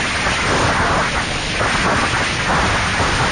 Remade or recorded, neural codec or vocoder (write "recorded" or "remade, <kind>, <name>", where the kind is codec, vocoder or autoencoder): recorded